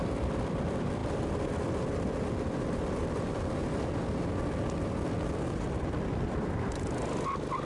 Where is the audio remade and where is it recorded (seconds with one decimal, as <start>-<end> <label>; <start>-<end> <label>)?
0.0-7.7 recorded